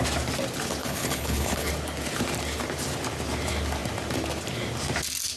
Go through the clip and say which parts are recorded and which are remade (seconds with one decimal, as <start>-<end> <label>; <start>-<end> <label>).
0.0-0.8 recorded; 0.8-1.7 remade; 1.7-5.4 recorded

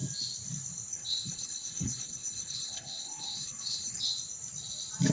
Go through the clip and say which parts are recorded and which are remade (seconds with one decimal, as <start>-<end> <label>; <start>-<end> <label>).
0.0-0.9 recorded; 0.9-4.0 remade; 4.0-5.1 recorded